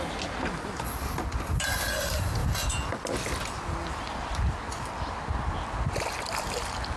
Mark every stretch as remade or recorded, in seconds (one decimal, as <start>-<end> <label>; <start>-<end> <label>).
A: 0.0-7.0 recorded